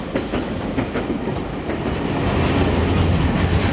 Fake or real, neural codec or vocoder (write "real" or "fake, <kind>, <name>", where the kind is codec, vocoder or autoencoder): real